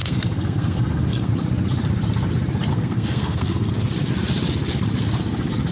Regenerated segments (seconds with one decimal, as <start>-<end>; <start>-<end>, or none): 0.0-1.3; 2.7-3.7